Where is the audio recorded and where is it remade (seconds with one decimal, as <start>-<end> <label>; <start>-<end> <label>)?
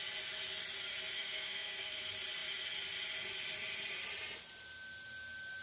0.0-1.2 recorded; 1.2-2.0 remade; 2.0-5.6 recorded